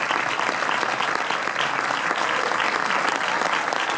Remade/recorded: recorded